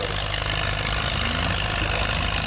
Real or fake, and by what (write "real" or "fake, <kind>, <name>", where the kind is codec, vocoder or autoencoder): real